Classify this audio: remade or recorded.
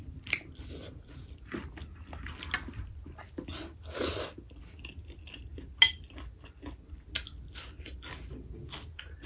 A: recorded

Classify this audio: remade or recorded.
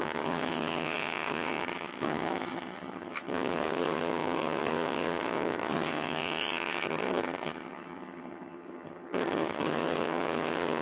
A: remade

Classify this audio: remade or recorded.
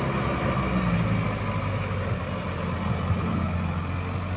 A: recorded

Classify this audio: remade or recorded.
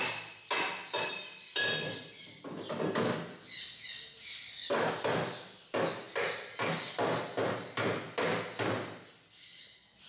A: recorded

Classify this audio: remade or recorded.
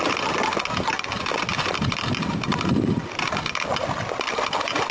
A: recorded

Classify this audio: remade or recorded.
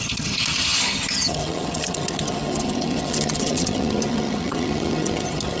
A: remade